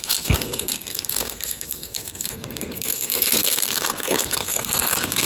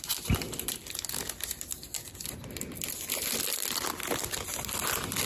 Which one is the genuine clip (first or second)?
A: second